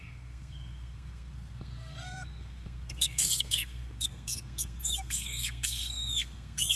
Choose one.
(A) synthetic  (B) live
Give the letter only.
A